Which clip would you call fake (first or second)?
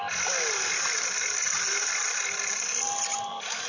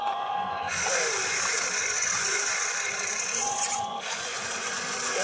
second